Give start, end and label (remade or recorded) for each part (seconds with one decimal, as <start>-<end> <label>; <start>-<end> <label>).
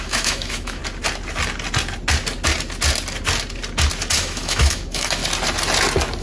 0.0-0.8 remade; 0.8-4.2 recorded; 4.2-5.2 remade; 5.2-6.2 recorded